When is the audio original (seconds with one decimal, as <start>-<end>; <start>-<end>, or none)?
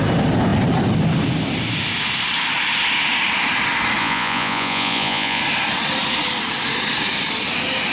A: 0.0-4.0; 5.4-7.9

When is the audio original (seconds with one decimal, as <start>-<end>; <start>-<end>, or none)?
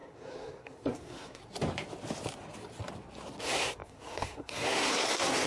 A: 1.4-3.4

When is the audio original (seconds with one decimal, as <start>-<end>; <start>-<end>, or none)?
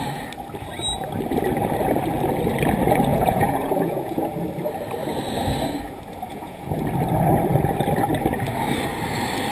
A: 0.0-3.1; 4.3-6.3; 6.8-9.5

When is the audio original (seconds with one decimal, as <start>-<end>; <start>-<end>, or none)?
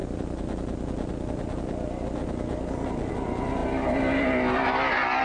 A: 0.0-5.2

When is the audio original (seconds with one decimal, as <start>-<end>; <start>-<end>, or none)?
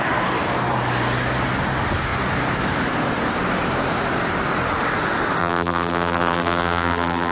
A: 0.0-5.4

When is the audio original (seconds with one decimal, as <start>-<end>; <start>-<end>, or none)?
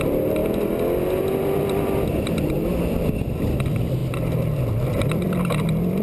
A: 0.4-1.6; 4.0-4.7